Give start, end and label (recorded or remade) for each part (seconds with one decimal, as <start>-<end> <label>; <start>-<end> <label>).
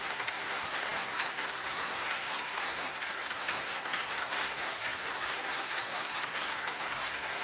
0.0-7.4 remade